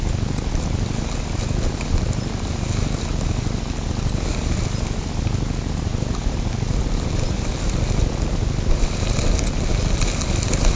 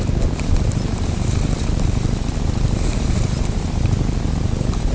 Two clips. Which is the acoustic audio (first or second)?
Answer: first